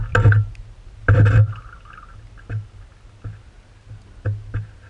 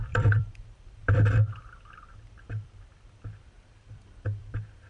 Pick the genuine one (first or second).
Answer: first